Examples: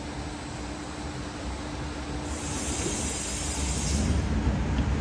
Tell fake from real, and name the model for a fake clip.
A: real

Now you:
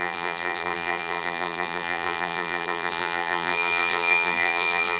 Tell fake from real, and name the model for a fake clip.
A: fake, vocoder, BigVGAN v2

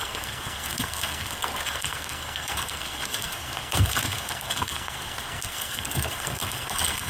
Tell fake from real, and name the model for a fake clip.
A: fake, codec, SNAC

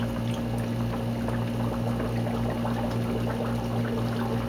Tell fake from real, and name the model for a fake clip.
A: real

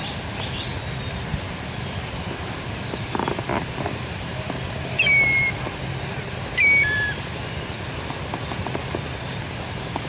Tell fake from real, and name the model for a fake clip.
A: real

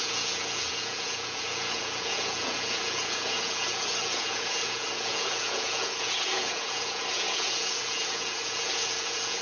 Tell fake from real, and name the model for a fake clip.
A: fake, vocoder, Vocos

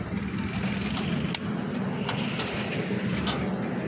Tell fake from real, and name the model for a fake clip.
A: real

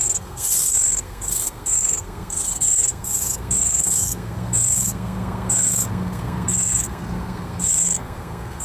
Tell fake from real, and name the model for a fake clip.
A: fake, codec, SNAC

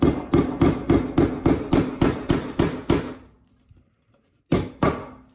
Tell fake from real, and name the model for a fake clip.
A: real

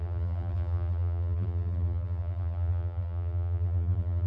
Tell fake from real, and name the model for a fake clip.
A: fake, vocoder, BigVGAN v2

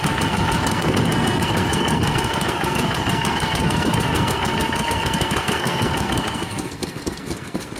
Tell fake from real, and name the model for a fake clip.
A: fake, codec, SNAC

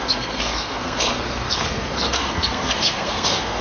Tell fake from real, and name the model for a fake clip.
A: fake, codec, SNAC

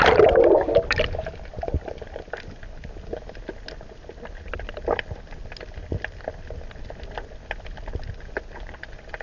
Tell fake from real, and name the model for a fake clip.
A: real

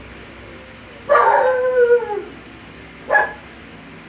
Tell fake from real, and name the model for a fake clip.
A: real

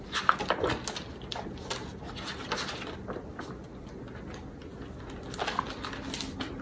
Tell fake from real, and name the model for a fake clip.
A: real